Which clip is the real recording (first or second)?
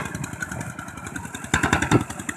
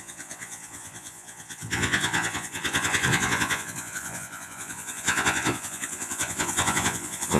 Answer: first